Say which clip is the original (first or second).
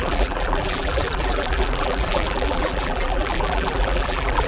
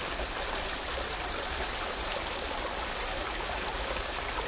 second